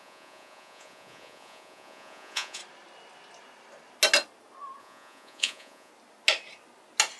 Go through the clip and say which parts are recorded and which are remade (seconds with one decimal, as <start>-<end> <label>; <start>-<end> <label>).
0.0-2.6 remade; 2.6-4.8 recorded; 4.8-5.9 remade; 5.9-7.2 recorded